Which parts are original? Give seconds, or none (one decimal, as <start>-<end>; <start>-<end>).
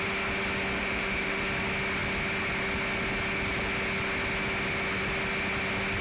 0.0-0.8; 1.4-6.0